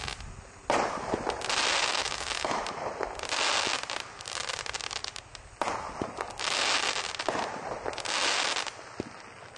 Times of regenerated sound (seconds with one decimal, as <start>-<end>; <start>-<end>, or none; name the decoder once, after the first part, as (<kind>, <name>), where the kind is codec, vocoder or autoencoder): 2.0-2.6 (autoencoder, DAC-VAE)